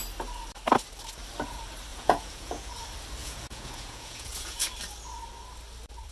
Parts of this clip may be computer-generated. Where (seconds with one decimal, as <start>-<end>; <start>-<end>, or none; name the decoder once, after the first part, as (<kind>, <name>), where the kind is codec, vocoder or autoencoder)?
1.9-2.7 (vocoder, Vocos); 3.2-4.7